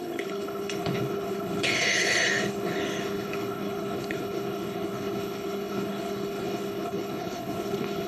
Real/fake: fake